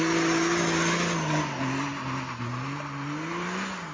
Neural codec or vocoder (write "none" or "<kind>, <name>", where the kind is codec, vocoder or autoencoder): none